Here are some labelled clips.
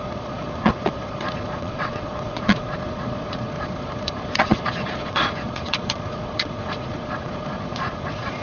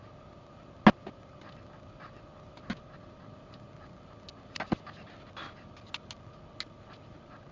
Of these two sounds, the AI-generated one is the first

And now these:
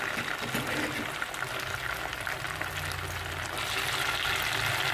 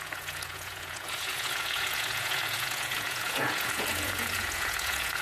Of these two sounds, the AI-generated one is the second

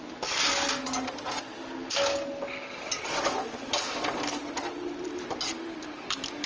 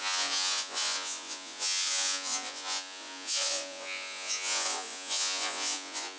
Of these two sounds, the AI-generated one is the second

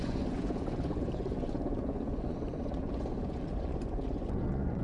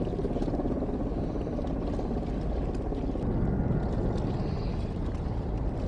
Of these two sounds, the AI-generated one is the first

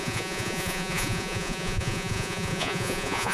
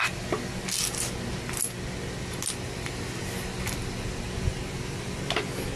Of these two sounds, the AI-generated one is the first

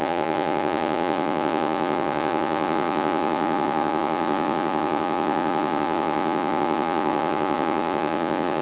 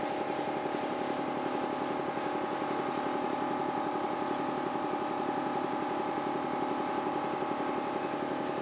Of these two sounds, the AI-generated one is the first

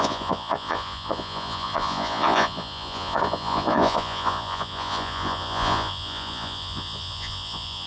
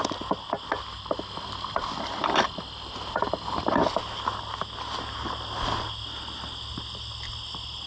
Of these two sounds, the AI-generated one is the first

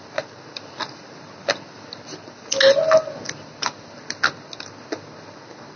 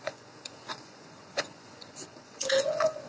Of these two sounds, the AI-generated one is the second